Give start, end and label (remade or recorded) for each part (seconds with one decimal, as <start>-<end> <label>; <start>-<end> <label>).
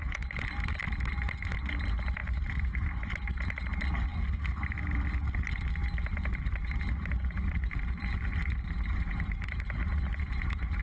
0.0-2.2 recorded; 2.2-3.4 remade; 3.4-6.3 recorded; 6.3-10.8 remade